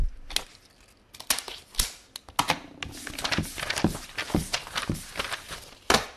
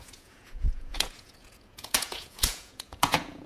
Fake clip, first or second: second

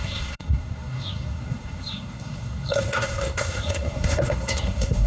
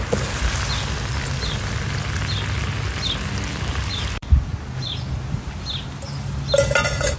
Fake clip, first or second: first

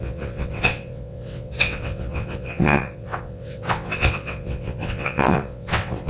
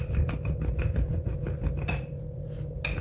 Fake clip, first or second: first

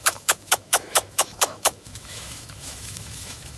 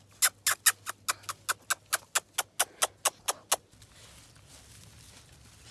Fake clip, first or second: first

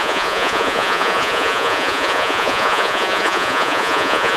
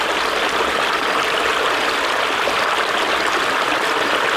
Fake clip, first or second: first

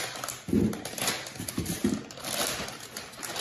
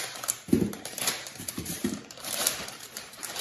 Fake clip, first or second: second